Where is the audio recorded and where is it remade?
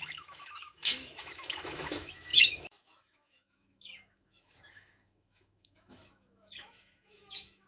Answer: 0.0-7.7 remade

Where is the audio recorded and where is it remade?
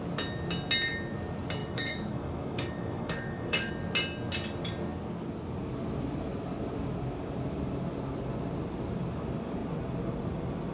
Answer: 0.0-1.6 recorded; 1.6-3.7 remade; 3.7-10.7 recorded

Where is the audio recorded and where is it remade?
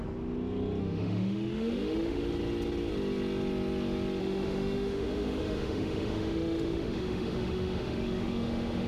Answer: 0.0-0.8 recorded; 0.8-2.3 remade; 2.3-4.2 recorded; 4.2-8.9 remade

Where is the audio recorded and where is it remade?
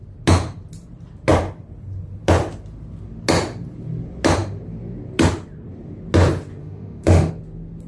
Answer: 0.0-6.6 recorded; 6.6-7.3 remade; 7.3-7.9 recorded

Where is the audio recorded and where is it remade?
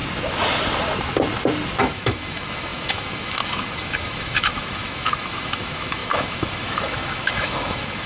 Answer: 0.0-1.8 recorded; 1.8-8.1 remade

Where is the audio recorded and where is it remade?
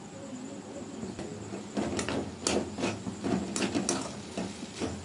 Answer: 0.0-5.0 recorded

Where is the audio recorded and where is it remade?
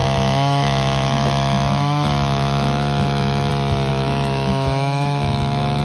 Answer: 0.0-3.5 remade; 3.5-3.9 recorded; 3.9-5.8 remade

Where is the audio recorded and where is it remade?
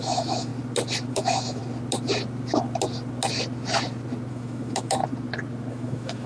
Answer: 0.0-0.5 remade; 0.5-1.1 recorded; 1.1-1.6 remade; 1.6-4.3 recorded; 4.3-5.0 remade; 5.0-5.7 recorded; 5.7-6.3 remade